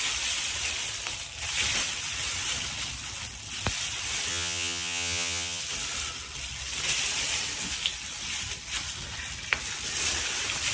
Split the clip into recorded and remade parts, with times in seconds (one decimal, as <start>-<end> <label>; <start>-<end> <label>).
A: 0.0-4.3 recorded; 4.3-5.6 remade; 5.6-10.7 recorded